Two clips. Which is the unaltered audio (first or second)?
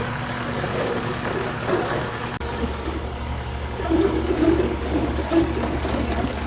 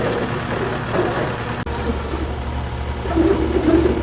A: second